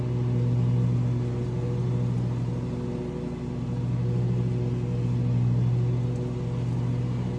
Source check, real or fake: real